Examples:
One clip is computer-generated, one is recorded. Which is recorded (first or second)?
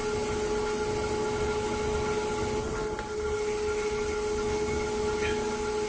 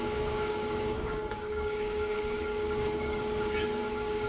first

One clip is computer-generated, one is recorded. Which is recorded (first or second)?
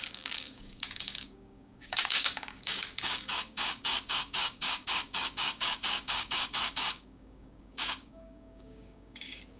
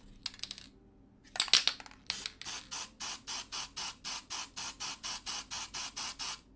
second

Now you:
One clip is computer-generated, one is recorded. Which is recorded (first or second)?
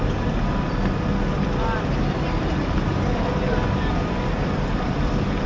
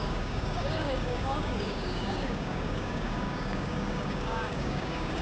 first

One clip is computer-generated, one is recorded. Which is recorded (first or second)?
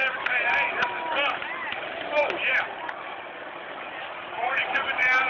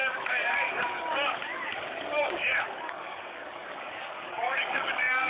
first